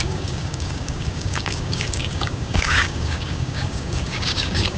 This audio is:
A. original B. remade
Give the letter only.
B